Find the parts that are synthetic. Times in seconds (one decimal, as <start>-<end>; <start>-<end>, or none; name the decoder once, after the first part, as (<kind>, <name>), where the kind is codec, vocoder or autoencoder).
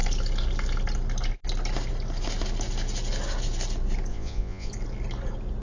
4.1-4.7 (vocoder, Vocos)